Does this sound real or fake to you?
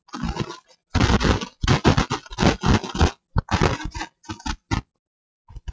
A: real